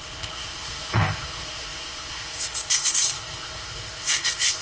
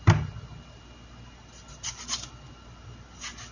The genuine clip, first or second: second